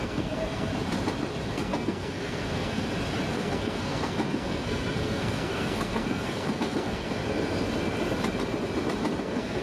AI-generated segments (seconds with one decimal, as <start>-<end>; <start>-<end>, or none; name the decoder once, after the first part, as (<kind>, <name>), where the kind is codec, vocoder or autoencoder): 0.0-0.7 (codec, SNAC); 1.5-2.8; 3.3-7.2; 9.2-9.6